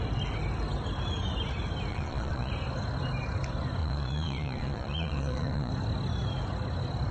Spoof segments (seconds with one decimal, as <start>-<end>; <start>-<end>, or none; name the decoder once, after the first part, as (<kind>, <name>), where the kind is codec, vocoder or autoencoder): 1.9-2.5 (vocoder, Vocos); 3.8-5.7